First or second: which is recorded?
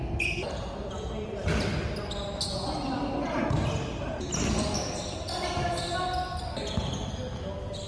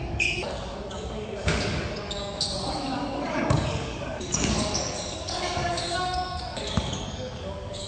first